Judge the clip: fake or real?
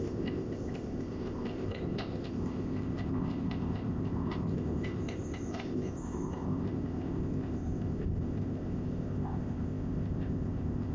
fake